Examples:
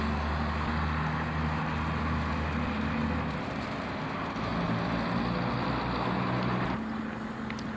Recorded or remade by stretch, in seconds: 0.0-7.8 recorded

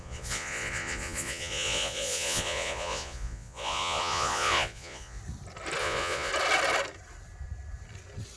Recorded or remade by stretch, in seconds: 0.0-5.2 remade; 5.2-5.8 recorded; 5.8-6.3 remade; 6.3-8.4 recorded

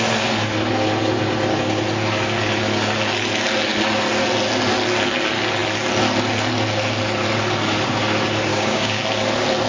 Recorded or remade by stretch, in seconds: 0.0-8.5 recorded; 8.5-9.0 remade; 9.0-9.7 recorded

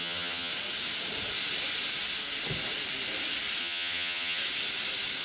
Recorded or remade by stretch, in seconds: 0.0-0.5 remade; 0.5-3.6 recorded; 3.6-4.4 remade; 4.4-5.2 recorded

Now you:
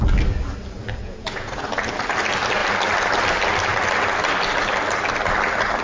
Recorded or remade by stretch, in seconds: 0.0-1.0 recorded; 1.0-1.7 remade; 1.7-5.8 recorded